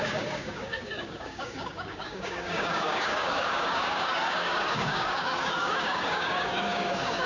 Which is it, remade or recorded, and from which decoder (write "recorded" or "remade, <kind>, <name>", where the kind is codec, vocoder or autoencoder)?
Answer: remade, codec, DAC